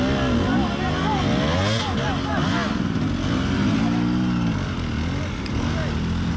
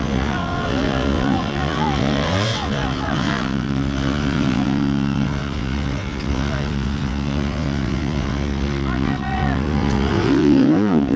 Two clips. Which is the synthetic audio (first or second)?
second